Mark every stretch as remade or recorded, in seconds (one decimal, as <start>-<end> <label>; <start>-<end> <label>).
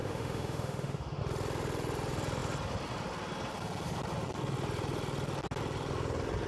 0.0-1.2 remade; 1.2-6.5 recorded